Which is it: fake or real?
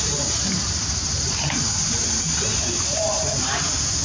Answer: real